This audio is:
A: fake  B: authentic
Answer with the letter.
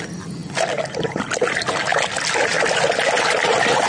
B